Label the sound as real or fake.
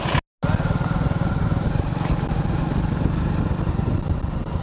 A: real